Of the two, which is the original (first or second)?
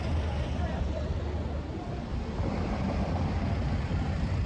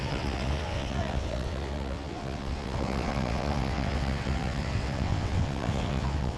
first